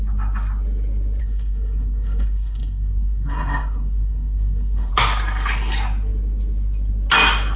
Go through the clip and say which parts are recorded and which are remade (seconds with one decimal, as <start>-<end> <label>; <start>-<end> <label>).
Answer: 0.0-1.2 recorded; 1.2-4.9 remade; 4.9-7.6 recorded